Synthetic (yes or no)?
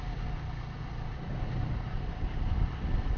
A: no